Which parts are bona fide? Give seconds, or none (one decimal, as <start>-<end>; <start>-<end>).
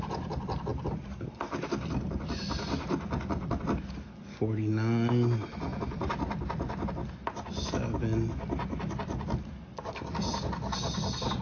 0.0-11.4